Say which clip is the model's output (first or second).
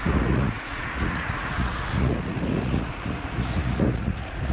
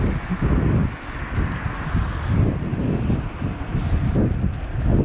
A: first